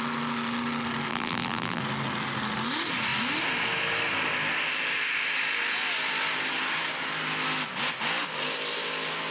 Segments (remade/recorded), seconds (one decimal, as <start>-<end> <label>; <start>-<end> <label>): 0.0-1.1 recorded; 1.1-1.8 remade; 1.8-9.3 recorded